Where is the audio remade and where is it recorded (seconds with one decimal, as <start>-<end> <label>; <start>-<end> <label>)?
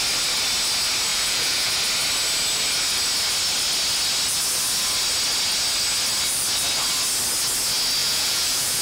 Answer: 0.0-1.1 recorded; 1.1-1.7 remade; 1.7-8.0 recorded; 8.0-8.8 remade